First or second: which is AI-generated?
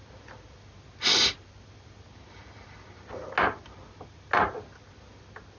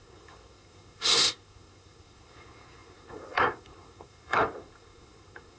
second